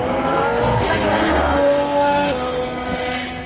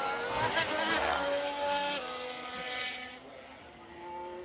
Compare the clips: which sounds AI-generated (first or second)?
first